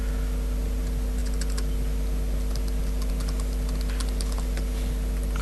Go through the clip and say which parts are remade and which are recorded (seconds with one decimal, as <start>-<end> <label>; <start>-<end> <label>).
0.0-5.4 recorded